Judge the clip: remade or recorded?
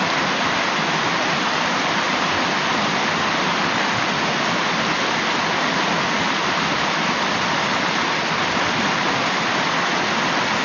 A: recorded